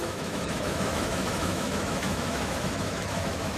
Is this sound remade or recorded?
remade